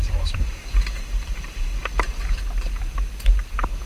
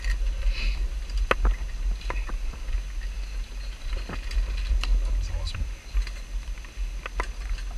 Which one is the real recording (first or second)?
second